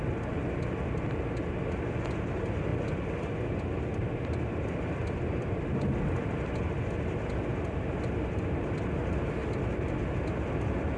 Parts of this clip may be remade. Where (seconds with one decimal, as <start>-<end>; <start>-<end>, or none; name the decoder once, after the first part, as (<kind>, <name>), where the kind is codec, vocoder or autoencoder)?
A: none